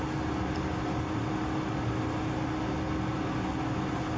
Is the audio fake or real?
real